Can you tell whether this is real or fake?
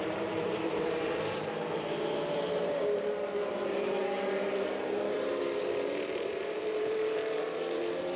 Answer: fake